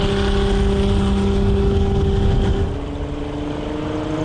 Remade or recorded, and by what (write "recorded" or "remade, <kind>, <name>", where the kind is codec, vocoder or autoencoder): recorded